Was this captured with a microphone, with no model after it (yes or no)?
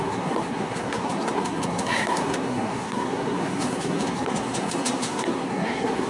no